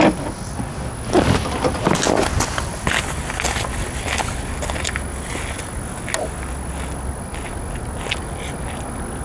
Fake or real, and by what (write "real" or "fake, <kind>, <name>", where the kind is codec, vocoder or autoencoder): real